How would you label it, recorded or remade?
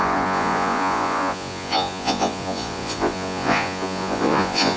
remade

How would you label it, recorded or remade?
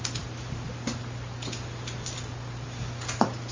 recorded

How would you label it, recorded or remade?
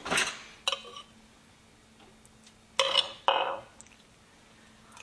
recorded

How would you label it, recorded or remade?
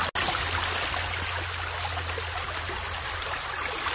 recorded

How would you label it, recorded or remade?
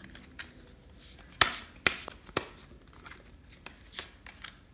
recorded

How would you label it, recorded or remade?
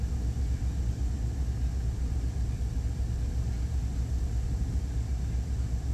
recorded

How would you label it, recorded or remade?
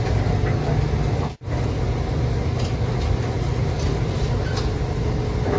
recorded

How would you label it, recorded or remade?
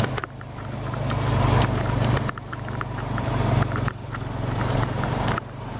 remade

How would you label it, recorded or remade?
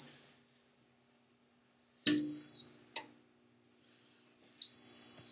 recorded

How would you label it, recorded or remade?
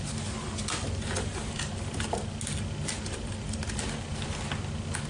recorded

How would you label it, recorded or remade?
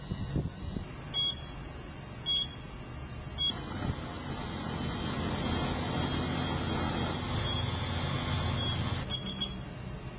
recorded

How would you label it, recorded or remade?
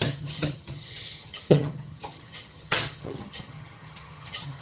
remade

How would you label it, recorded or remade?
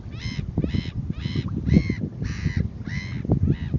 recorded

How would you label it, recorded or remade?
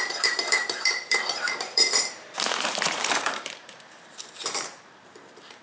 remade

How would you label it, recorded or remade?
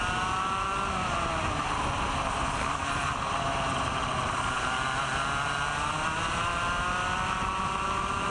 recorded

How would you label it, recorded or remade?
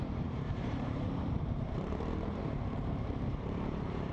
remade